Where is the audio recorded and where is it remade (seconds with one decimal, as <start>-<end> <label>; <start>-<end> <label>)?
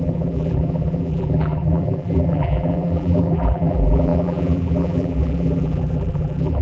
0.0-6.6 remade